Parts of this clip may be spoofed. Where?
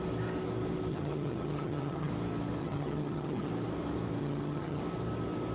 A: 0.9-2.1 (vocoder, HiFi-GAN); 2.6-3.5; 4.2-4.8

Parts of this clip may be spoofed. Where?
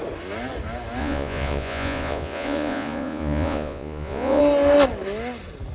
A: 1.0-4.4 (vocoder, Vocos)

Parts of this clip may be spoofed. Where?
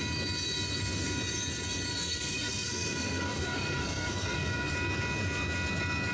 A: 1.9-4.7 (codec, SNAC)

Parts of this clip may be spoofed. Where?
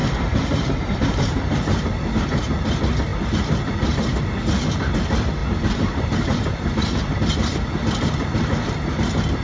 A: 0.0-2.1 (vocoder, BigVGAN v2); 5.4-7.2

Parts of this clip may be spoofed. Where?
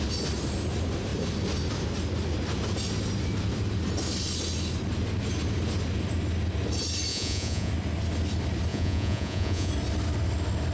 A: 7.1-7.7 (vocoder, Vocos); 8.7-9.7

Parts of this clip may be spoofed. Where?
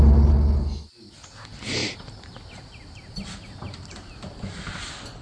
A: none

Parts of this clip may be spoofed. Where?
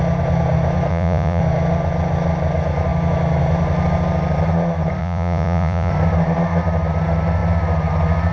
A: 0.9-1.4 (vocoder, Vocos); 5.0-5.9